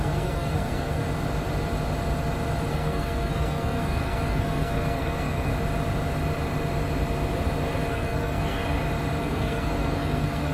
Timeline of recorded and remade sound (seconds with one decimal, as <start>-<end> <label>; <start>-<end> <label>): 0.0-1.0 remade; 1.0-2.7 recorded; 2.7-5.5 remade; 5.5-7.9 recorded; 7.9-8.6 remade; 8.6-9.2 recorded; 9.2-10.5 remade